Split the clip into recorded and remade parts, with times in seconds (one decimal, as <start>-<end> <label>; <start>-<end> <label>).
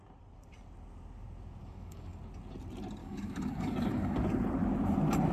0.0-1.6 recorded; 1.6-2.2 remade; 2.2-3.0 recorded; 3.0-4.2 remade; 4.2-5.3 recorded